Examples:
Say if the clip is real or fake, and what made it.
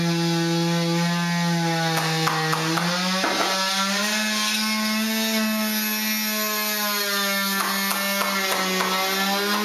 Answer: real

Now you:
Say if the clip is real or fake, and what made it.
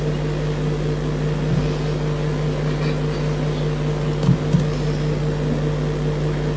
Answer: real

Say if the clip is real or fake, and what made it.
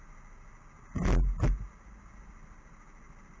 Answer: real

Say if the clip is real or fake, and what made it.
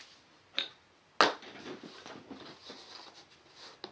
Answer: real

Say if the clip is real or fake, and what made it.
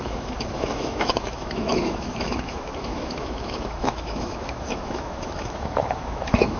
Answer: fake, autoencoder, DAC-VAE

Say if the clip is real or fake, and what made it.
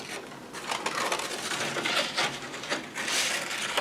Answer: real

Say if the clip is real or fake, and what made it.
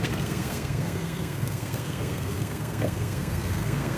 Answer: fake, codec, SNAC